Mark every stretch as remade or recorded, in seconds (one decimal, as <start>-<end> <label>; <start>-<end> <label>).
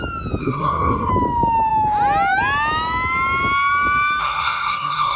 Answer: 0.0-0.4 recorded; 0.4-1.1 remade; 1.1-4.2 recorded; 4.2-5.2 remade